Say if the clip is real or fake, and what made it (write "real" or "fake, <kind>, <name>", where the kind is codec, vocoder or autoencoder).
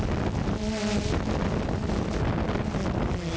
real